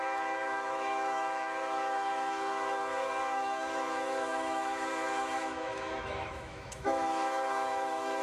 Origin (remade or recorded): remade